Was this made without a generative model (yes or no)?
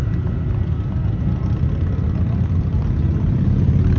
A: yes